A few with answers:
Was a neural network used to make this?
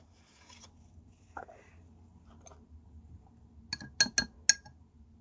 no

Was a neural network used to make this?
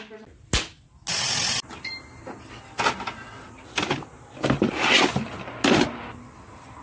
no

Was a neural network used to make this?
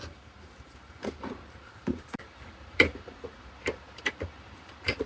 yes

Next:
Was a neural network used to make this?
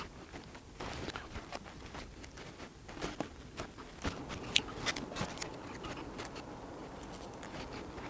no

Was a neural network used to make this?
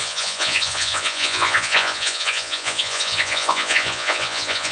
yes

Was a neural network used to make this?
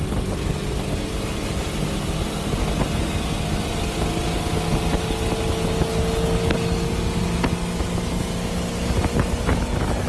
no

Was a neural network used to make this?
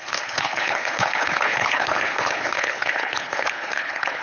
yes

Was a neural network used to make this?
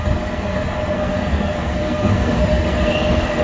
yes